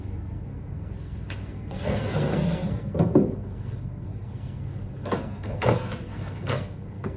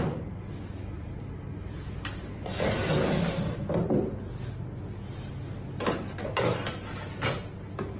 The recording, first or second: second